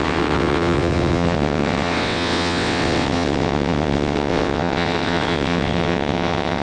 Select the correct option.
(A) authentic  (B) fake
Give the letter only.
B